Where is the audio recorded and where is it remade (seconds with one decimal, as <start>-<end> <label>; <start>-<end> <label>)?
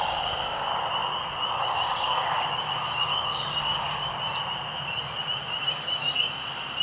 0.0-0.7 remade; 0.7-1.6 recorded; 1.6-4.1 remade; 4.1-5.4 recorded; 5.4-6.8 remade